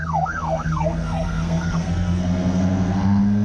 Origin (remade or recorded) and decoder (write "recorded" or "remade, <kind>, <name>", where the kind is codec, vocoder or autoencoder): remade, codec, SNAC